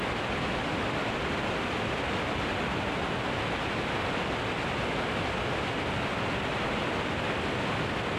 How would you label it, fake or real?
real